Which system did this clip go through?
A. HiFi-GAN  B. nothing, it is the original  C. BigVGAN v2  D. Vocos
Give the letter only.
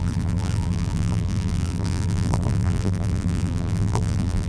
C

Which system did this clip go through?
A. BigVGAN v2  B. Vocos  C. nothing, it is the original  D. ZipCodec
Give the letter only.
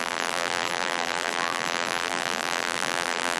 A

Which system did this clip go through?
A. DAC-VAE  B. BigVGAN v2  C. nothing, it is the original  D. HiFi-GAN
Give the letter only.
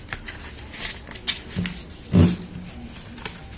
C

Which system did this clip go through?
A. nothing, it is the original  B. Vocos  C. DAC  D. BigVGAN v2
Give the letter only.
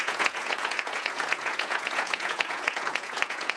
B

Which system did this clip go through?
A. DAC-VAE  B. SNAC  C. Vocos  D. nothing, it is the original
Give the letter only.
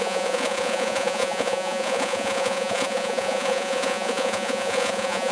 C